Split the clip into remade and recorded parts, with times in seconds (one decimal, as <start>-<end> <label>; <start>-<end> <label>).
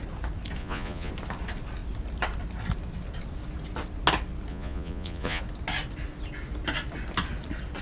0.0-0.6 recorded; 0.6-1.1 remade; 1.1-4.5 recorded; 4.5-5.4 remade; 5.4-7.8 recorded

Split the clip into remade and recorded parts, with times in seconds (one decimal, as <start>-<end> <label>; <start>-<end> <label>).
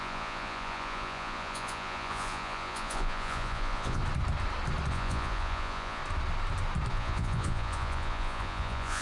0.0-4.0 remade; 4.0-4.9 recorded; 4.9-6.0 remade; 6.0-6.9 recorded; 6.9-9.0 remade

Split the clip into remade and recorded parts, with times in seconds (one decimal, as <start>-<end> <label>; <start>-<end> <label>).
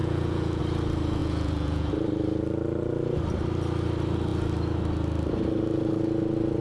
0.0-0.6 remade; 0.6-1.2 recorded; 1.2-1.9 remade; 1.9-6.6 recorded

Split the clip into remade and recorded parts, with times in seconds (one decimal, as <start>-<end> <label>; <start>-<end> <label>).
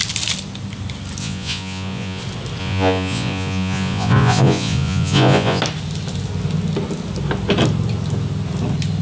0.0-1.2 recorded; 1.2-2.2 remade; 2.2-2.6 recorded; 2.6-5.6 remade; 5.6-9.0 recorded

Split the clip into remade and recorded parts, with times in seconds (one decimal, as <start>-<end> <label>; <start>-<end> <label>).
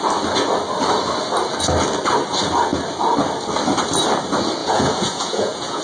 0.0-4.6 recorded; 4.6-5.8 remade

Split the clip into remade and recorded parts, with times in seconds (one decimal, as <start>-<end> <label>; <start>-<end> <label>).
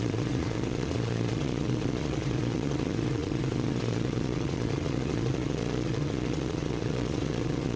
0.0-7.8 remade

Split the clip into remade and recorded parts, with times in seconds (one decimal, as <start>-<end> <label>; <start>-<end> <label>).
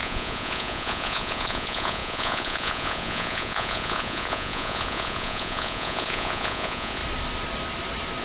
0.0-7.0 remade; 7.0-8.2 recorded